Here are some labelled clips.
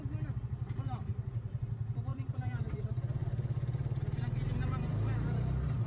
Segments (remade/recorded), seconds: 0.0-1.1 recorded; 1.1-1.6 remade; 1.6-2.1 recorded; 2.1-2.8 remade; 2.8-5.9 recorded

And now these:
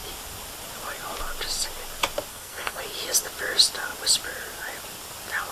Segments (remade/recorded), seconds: 0.0-2.3 recorded; 2.3-2.8 remade; 2.8-5.5 recorded